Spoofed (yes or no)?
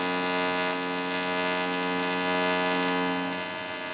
no